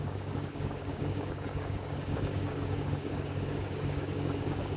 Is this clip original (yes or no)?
no